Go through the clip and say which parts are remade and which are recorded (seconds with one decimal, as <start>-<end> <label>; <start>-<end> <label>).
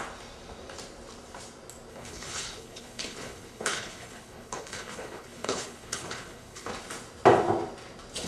0.0-1.9 recorded; 1.9-6.7 remade; 6.7-8.3 recorded